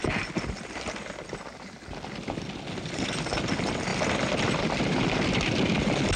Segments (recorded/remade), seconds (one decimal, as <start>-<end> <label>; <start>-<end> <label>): 0.0-3.9 recorded; 3.9-4.6 remade; 4.6-6.2 recorded